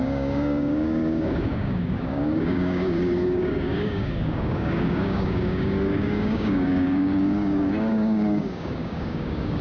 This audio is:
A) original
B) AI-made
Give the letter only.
B